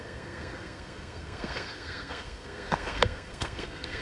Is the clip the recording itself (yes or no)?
no